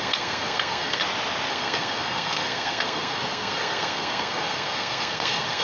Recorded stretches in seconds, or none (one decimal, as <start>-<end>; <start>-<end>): 1.0-1.5